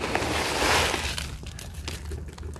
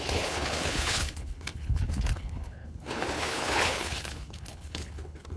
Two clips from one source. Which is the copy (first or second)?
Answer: second